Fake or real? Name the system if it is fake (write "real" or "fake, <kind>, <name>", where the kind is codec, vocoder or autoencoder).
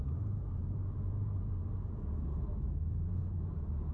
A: fake, vocoder, BigVGAN v2